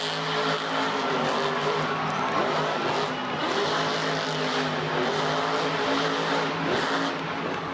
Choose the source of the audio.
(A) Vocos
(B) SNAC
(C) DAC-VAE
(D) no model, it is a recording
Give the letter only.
D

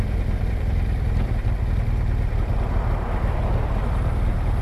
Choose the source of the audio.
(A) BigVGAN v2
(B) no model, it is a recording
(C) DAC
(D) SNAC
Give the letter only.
A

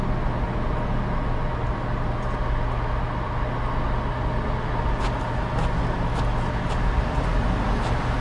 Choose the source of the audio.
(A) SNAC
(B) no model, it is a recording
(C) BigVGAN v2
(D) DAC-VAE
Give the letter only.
B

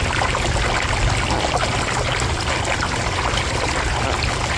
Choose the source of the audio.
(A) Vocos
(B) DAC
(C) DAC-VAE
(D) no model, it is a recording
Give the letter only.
D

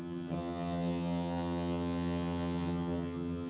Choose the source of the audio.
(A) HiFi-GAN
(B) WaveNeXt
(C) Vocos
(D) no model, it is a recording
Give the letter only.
A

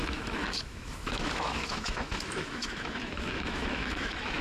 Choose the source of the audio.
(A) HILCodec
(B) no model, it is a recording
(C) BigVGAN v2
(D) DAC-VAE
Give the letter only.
D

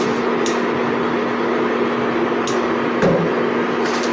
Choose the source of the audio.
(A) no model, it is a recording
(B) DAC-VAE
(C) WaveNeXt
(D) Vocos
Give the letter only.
A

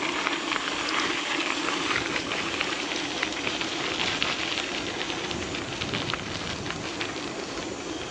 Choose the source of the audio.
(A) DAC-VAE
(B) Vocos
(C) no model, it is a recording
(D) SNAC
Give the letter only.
C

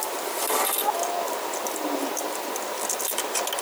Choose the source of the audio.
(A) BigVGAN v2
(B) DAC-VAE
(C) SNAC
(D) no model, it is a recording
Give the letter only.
D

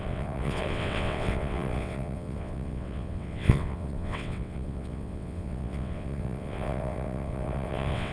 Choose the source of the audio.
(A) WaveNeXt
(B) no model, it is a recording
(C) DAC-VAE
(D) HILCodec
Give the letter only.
A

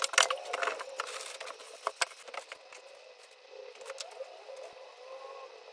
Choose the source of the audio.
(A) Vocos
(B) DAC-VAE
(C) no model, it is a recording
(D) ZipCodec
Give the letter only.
C